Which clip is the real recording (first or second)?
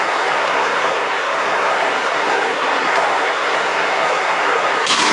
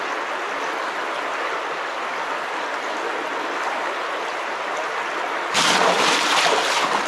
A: second